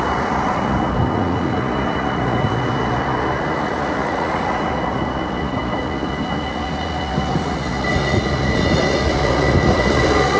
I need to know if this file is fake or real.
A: fake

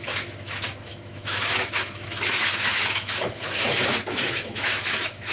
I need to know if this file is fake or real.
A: fake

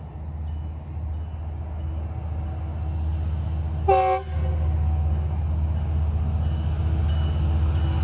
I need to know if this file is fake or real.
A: real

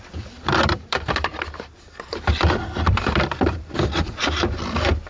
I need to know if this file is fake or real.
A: fake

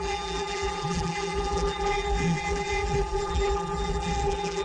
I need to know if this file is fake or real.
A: fake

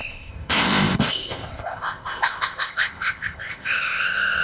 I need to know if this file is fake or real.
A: fake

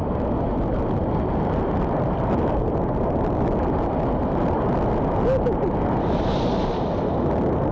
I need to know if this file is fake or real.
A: real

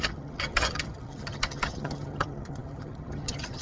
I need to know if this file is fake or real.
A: fake